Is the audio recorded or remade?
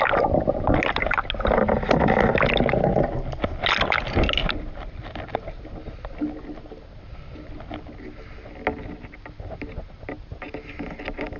recorded